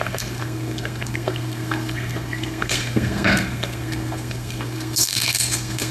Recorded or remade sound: remade